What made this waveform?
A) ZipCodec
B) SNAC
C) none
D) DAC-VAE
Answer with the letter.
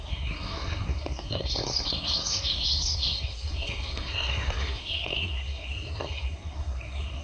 B